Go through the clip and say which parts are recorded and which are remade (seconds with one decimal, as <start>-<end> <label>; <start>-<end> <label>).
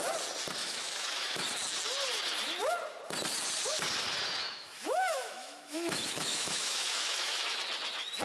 0.0-0.6 recorded; 0.6-1.4 remade; 1.4-4.4 recorded; 4.4-7.6 remade; 7.6-8.2 recorded